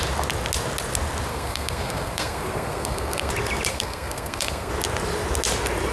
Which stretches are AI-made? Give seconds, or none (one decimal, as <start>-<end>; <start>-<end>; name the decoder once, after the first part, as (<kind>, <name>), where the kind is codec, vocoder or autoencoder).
1.3-3.3 (codec, SNAC); 3.7-4.7